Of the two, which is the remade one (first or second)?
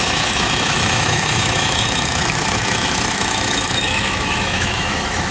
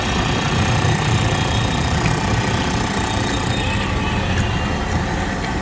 first